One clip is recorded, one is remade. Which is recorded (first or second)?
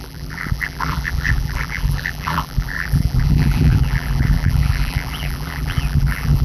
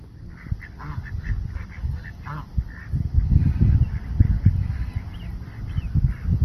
second